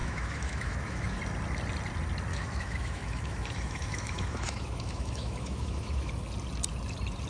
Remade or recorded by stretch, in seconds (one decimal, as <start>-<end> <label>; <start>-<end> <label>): 0.0-1.2 remade; 1.2-2.3 recorded; 2.3-6.1 remade; 6.1-7.3 recorded

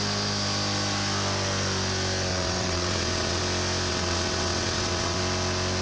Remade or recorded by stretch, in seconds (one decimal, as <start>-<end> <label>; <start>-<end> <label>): 0.0-2.3 recorded; 2.3-3.4 remade; 3.4-3.9 recorded; 3.9-5.2 remade; 5.2-5.8 recorded